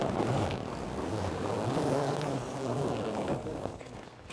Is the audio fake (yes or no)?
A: yes